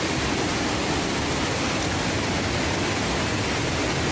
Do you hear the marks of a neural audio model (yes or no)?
no